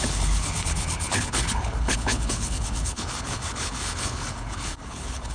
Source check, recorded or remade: remade